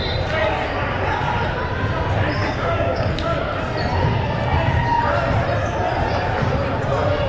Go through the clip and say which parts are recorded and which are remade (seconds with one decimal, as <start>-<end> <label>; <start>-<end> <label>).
0.0-2.4 recorded; 2.4-3.1 remade; 3.1-7.3 recorded